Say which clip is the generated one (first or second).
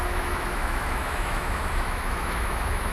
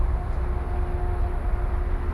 first